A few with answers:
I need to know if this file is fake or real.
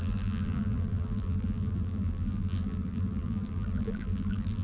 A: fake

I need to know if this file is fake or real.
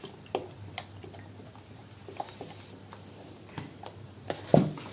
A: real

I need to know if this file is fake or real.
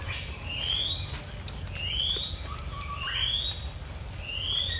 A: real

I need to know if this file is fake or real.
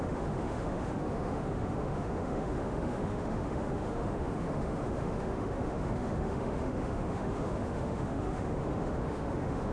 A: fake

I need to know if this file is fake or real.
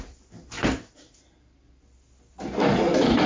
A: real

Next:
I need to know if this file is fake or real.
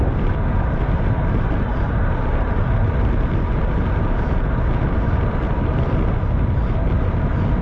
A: real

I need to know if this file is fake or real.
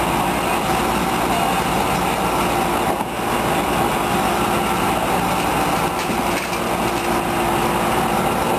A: real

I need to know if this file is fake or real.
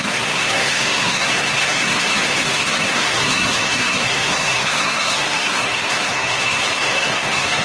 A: fake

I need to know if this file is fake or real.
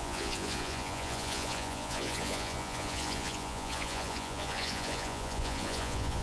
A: fake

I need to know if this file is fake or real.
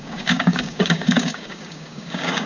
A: fake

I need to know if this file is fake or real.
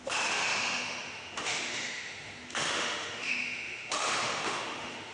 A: fake